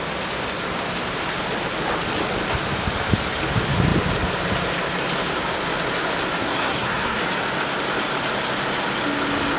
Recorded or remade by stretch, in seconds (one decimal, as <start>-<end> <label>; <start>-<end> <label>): 0.0-6.4 recorded; 6.4-7.2 remade; 7.2-9.6 recorded